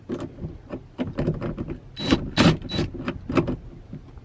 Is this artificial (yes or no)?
no